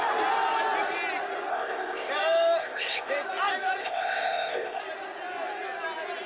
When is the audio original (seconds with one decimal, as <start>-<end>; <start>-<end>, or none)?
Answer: 0.0-1.5; 2.1-2.6; 3.1-3.8; 4.8-6.3